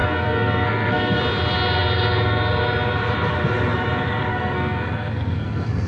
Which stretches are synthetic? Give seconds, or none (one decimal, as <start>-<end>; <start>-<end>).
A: 0.0-1.2; 4.3-5.9